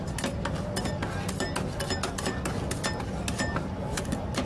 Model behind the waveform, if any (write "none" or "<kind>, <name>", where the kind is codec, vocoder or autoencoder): none